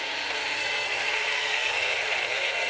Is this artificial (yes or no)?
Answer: yes